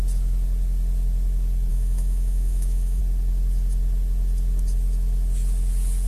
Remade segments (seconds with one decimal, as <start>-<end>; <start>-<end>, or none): 1.7-3.0